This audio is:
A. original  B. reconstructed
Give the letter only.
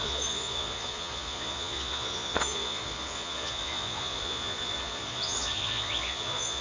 B